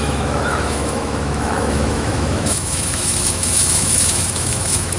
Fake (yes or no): yes